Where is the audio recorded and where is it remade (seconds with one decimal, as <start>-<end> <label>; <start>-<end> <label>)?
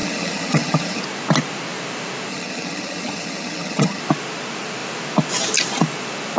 0.0-1.0 remade; 1.0-2.3 recorded; 2.3-4.0 remade; 4.0-6.4 recorded